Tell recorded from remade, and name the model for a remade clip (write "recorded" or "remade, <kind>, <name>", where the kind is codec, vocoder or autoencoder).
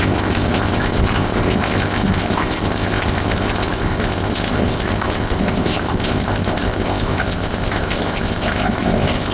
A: remade, codec, ZipCodec